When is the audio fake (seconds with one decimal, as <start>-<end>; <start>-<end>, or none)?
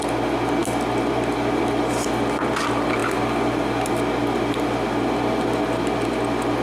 none